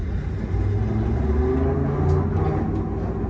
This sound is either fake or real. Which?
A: real